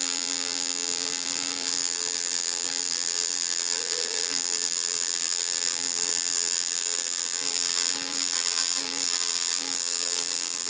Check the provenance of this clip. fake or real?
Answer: fake